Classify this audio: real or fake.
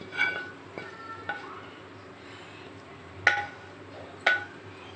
real